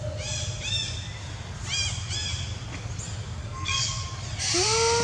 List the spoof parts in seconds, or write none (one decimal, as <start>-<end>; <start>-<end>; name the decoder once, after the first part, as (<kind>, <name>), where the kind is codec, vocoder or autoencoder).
3.4-4.0 (codec, SNAC)